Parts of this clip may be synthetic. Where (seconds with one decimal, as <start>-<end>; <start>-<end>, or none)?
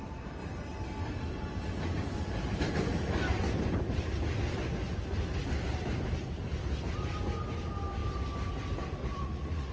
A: 9.0-9.7